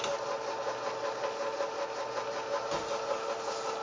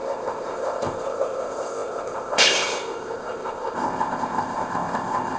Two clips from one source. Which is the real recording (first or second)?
first